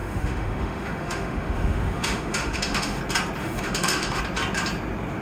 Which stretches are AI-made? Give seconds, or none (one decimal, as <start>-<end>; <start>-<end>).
0.0-3.0; 3.4-4.2